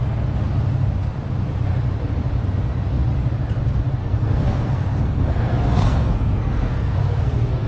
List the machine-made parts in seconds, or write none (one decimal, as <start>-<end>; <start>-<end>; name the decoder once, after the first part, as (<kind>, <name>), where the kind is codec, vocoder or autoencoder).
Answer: 4.0-7.7 (codec, SNAC)